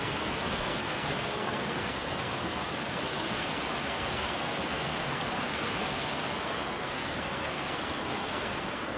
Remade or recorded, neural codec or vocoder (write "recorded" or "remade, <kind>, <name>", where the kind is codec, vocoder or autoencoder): remade, codec, SNAC